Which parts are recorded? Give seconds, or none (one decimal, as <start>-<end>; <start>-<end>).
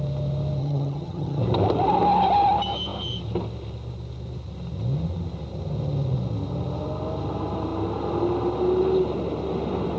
0.0-0.6; 1.4-10.0